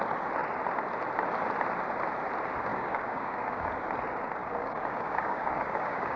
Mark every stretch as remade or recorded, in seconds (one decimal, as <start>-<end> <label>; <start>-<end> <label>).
0.0-2.7 recorded; 2.7-3.7 remade; 3.7-4.4 recorded; 4.4-6.2 remade